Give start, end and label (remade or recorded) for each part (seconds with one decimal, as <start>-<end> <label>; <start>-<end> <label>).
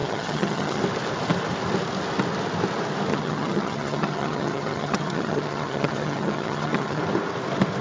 0.0-0.8 remade; 0.8-3.1 recorded; 3.1-7.0 remade; 7.0-7.8 recorded